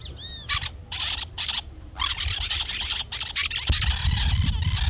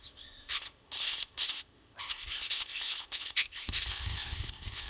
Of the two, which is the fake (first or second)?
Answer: second